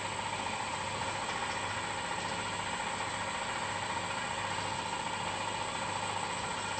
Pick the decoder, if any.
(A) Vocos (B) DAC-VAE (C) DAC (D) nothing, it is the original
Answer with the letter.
D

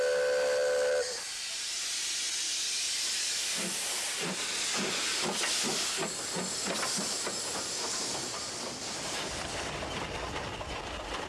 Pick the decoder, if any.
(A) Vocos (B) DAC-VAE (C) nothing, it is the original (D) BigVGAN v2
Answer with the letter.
C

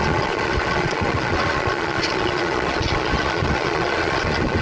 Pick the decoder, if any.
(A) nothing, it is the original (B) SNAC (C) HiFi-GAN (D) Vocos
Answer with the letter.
D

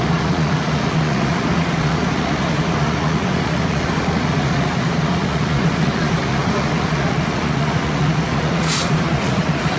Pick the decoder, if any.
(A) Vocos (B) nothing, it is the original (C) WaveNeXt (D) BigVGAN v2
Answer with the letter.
A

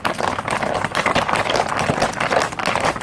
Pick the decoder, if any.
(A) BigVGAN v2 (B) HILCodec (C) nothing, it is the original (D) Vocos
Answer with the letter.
C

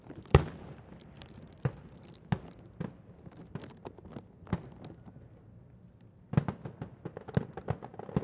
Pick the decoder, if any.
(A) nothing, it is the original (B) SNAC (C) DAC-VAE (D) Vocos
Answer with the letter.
A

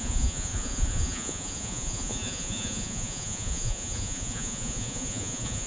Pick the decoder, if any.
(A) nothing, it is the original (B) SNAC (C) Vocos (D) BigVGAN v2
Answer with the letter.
C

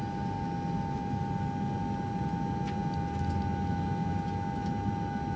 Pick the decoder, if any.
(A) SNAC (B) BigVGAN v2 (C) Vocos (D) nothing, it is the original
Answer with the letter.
D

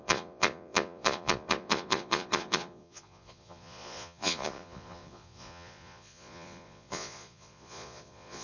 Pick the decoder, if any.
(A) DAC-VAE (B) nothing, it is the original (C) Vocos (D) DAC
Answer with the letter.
C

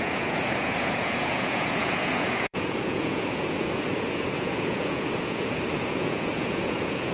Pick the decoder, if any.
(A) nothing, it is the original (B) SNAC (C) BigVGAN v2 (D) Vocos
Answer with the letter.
D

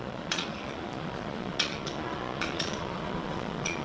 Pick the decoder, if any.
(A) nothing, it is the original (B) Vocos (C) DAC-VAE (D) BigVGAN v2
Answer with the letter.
B